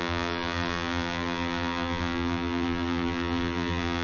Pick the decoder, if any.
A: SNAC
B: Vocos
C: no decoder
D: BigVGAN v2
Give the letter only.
D